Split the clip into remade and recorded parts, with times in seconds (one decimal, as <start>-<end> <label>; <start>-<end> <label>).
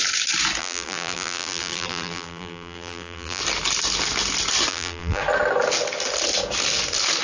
0.0-0.6 recorded; 0.6-3.4 remade; 3.4-4.7 recorded; 4.7-5.2 remade; 5.2-7.2 recorded